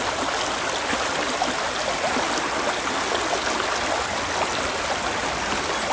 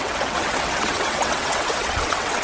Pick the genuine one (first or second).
first